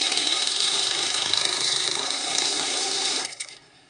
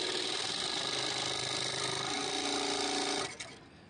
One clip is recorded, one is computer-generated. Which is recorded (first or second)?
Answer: second